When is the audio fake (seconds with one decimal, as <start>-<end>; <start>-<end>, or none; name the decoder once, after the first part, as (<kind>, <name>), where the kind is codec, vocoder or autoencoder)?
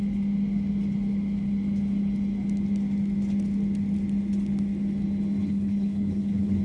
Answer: 5.4-6.6 (codec, HILCodec)